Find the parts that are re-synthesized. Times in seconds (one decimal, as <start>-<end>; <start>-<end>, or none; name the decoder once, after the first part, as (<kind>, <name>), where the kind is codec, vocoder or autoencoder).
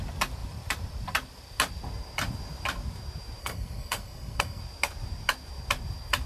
3.4-4.6 (codec, SNAC)